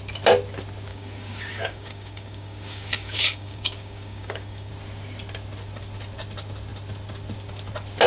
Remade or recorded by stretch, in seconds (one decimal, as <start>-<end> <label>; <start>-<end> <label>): 0.0-0.9 recorded; 0.9-4.7 remade; 4.7-8.1 recorded